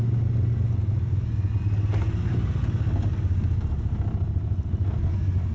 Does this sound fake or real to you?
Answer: real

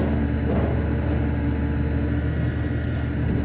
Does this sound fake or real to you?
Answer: real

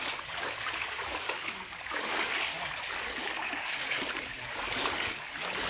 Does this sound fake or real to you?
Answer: fake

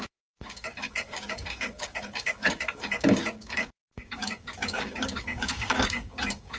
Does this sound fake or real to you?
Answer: fake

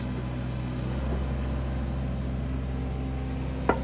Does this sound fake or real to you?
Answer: real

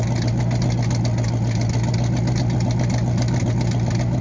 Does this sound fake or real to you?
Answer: real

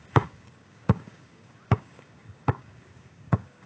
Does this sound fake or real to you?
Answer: fake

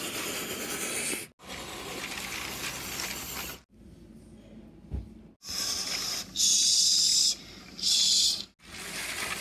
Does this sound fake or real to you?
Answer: real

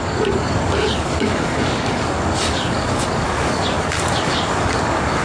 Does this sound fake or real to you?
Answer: fake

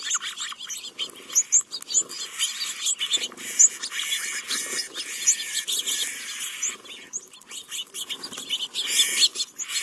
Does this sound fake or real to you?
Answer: real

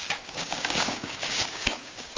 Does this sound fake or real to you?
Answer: fake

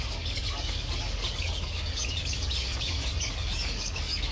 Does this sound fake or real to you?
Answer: fake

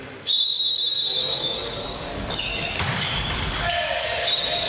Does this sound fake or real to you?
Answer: fake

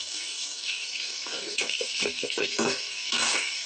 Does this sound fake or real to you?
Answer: fake